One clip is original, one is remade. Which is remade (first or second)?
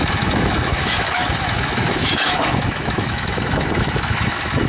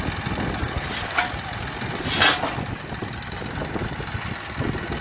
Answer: first